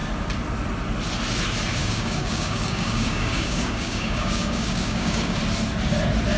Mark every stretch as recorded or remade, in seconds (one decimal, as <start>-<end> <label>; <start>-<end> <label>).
0.0-1.8 recorded; 1.8-5.4 remade; 5.4-6.4 recorded